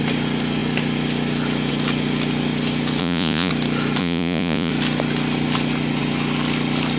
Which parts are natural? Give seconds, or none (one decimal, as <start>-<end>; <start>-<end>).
0.0-3.0; 3.5-4.0; 4.7-7.0